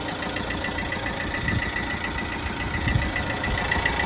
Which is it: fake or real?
real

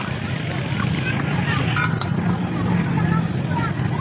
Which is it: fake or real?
real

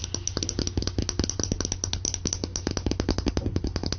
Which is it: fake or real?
real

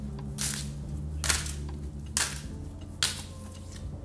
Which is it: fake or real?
real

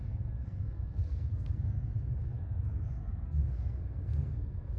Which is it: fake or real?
fake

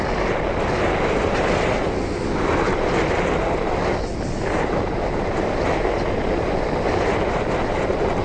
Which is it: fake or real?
real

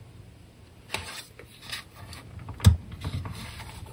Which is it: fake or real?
real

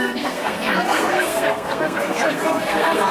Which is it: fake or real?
fake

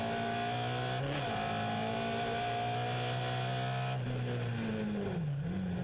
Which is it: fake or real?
real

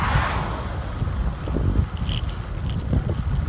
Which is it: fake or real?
real